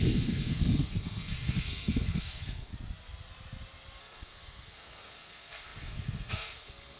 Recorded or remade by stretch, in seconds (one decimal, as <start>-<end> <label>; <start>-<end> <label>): 0.0-2.7 remade; 2.7-4.0 recorded; 4.0-7.0 remade